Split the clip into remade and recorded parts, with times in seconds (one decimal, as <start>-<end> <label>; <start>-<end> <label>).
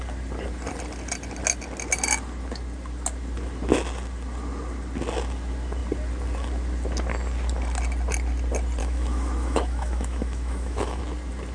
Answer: 0.0-8.8 recorded; 8.8-11.0 remade; 11.0-11.5 recorded